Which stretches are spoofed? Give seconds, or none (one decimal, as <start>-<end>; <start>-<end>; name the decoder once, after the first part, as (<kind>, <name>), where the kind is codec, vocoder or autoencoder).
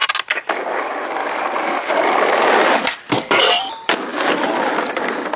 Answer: 1.2-3.4 (vocoder, BigVGAN v2); 4.1-4.7